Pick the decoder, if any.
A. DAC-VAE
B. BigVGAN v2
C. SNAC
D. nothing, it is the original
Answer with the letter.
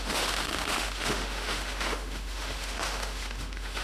A